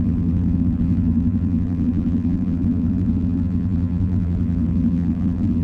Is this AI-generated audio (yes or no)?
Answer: yes